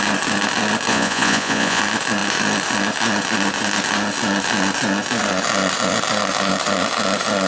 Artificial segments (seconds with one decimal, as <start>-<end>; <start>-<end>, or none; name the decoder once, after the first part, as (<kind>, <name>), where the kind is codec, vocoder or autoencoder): 0.9-1.8 (vocoder, Vocos)